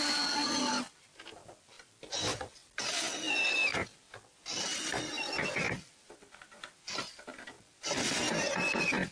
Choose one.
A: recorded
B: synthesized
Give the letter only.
A